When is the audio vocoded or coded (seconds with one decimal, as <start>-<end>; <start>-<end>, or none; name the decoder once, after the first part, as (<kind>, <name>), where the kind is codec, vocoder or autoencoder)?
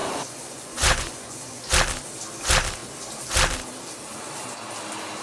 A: 0.0-1.7 (vocoder, Vocos)